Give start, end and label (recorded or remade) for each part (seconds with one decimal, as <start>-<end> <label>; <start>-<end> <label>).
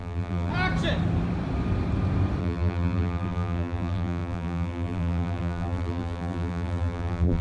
0.0-0.5 remade; 0.5-2.4 recorded; 2.4-7.4 remade